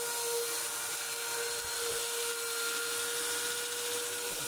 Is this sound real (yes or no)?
yes